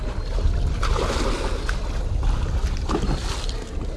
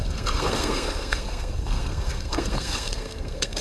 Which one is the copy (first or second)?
second